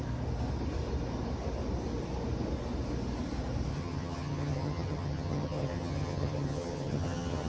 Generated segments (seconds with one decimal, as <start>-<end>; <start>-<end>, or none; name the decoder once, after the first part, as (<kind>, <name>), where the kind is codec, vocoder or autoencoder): 3.7-7.5 (vocoder, HiFi-GAN)